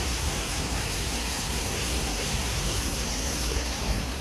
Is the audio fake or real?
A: fake